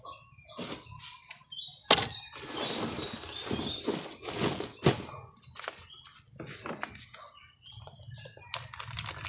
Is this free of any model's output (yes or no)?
yes